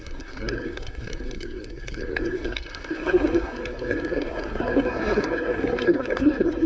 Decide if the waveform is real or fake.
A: fake